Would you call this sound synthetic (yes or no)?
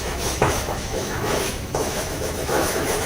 yes